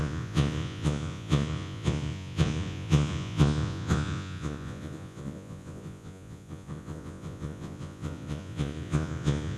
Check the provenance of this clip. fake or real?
fake